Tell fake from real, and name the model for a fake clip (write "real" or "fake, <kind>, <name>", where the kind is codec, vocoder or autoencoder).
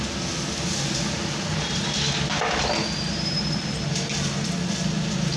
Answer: real